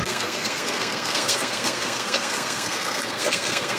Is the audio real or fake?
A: fake